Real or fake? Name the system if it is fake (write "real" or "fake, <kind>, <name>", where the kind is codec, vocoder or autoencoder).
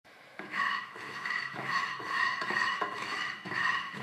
fake, autoencoder, DAC-VAE